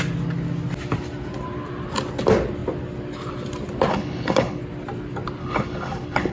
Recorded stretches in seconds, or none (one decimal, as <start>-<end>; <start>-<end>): 0.0-3.9; 4.6-5.4